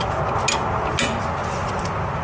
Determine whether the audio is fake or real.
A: real